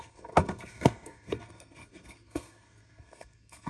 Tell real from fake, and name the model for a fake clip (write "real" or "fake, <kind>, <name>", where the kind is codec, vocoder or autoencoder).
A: fake, codec, SNAC